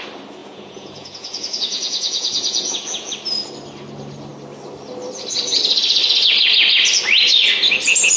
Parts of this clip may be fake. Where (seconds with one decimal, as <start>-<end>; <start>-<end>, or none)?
0.4-3.1